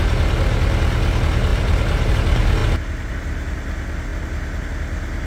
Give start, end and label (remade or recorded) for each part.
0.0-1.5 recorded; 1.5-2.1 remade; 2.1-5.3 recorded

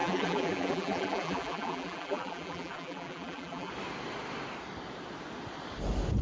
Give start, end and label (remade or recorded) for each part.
0.0-3.7 remade; 3.7-6.2 recorded

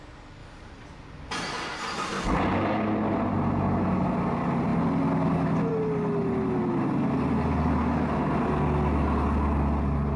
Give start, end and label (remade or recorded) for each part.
0.0-0.4 recorded; 0.4-1.4 remade; 1.4-10.2 recorded

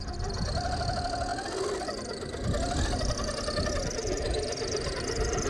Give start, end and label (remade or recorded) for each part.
0.0-5.5 recorded

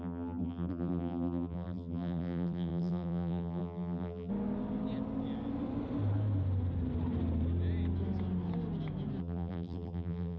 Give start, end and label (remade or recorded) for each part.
0.0-4.3 remade; 4.3-9.2 recorded; 9.2-10.4 remade